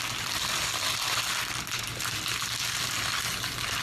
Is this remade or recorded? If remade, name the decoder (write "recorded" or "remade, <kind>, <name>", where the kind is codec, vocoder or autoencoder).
recorded